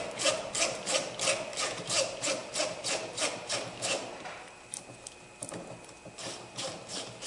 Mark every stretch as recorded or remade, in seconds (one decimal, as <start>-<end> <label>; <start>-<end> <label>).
0.0-1.0 remade; 1.0-1.6 recorded; 1.6-7.3 remade